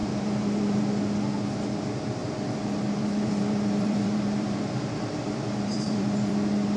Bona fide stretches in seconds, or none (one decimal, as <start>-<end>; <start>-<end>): 0.8-2.2; 6.3-6.8